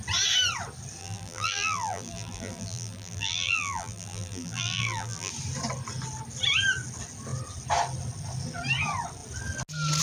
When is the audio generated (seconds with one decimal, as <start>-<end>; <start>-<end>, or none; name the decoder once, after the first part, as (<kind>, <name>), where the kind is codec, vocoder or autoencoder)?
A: 1.0-5.3 (vocoder, BigVGAN v2)